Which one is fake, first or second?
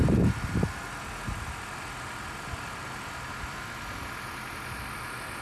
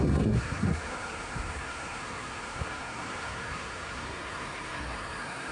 second